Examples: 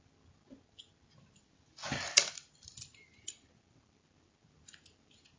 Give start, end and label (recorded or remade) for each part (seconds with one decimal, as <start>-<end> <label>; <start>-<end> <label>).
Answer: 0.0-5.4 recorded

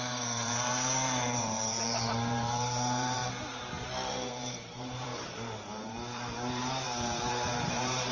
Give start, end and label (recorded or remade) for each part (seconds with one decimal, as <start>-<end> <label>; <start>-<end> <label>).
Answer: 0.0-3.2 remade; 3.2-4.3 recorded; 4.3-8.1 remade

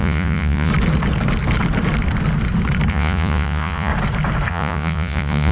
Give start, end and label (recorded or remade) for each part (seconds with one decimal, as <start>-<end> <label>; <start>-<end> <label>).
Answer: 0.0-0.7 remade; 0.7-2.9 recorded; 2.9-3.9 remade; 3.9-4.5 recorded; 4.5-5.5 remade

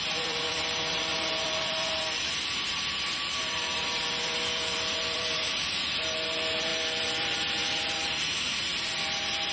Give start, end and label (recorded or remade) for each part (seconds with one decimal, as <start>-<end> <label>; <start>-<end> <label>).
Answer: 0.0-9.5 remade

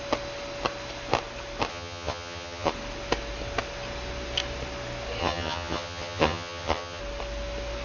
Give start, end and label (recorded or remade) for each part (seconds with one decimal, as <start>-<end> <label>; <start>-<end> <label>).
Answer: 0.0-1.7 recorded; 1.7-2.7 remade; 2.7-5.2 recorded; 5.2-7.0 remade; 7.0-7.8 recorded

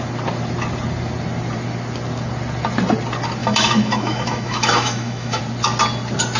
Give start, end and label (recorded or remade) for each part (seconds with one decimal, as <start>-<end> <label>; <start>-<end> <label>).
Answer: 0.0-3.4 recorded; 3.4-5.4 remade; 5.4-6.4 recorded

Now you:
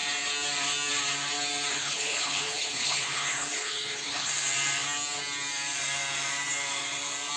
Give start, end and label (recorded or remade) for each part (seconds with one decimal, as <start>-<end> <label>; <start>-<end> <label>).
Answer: 0.0-1.7 recorded; 1.7-4.3 remade; 4.3-7.4 recorded

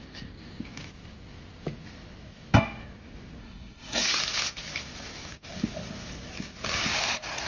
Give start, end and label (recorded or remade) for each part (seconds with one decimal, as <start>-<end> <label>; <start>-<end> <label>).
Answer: 0.0-3.4 recorded; 3.4-4.2 remade; 4.2-7.5 recorded